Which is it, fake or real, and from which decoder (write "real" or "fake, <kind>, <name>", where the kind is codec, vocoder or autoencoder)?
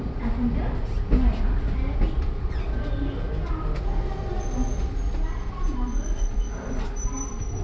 real